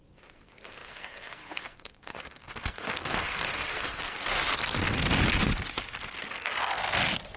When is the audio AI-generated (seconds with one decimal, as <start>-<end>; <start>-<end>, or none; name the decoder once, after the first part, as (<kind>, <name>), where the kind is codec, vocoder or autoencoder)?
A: 0.0-4.3 (codec, SNAC); 6.2-6.8